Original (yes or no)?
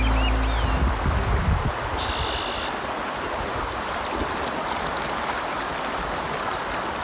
yes